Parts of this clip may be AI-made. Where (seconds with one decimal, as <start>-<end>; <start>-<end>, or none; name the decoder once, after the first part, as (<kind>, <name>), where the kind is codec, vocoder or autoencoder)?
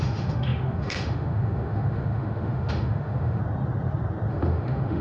0.0-3.4 (autoencoder, DAC-VAE); 4.3-5.0